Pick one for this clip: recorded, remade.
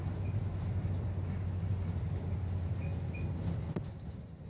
recorded